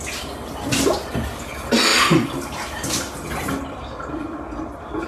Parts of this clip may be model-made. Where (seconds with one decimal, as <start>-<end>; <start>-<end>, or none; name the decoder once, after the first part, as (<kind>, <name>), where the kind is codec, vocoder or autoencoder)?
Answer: none